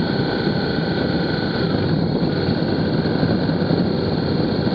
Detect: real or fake real